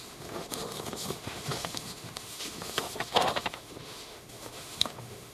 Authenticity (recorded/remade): remade